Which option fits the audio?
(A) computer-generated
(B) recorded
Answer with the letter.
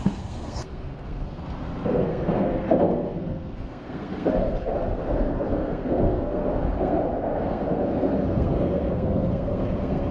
A